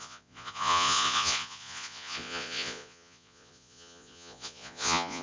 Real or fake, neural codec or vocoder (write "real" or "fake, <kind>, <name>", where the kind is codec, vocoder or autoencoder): fake, vocoder, Vocos